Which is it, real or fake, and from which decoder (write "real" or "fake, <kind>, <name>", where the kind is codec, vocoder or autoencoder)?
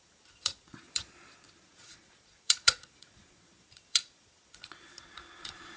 fake, vocoder, Vocos